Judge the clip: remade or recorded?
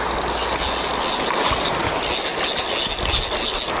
recorded